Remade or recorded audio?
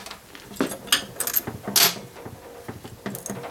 recorded